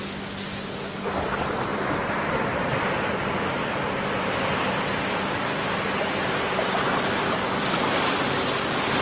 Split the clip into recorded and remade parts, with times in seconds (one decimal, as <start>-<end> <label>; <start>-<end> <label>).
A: 0.0-1.7 recorded; 1.7-2.3 remade; 2.3-3.6 recorded; 3.6-8.3 remade; 8.3-9.0 recorded